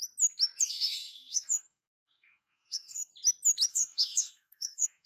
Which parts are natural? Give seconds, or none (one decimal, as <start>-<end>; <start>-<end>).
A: 0.0-0.7; 3.1-3.7